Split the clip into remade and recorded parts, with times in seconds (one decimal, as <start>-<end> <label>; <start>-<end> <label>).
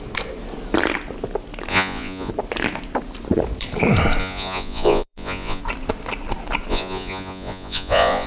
0.0-1.7 recorded; 1.7-2.3 remade; 2.3-4.2 recorded; 4.2-5.6 remade; 5.6-6.7 recorded; 6.7-8.3 remade